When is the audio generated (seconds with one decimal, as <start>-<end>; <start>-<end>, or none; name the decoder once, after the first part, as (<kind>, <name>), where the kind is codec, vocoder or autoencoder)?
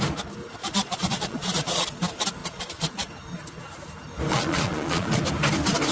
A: 0.6-2.0 (vocoder, Vocos); 2.4-3.1; 4.3-5.2